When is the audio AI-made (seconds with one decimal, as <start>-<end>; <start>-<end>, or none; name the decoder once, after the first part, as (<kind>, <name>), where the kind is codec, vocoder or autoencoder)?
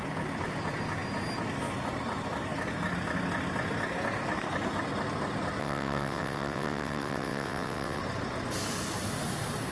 5.6-8.0 (vocoder, WaveNeXt)